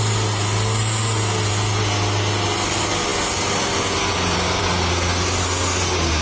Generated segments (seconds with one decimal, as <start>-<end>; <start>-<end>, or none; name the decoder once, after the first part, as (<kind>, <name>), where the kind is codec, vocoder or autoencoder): none